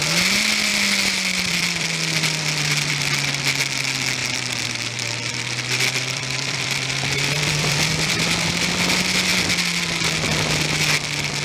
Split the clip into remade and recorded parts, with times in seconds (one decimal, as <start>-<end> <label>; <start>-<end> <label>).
0.0-0.7 recorded; 0.7-2.9 remade; 2.9-4.2 recorded; 4.2-8.7 remade; 8.7-11.4 recorded